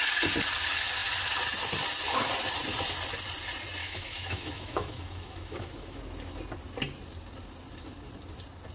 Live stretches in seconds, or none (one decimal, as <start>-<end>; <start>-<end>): 0.0-3.8; 6.0-8.7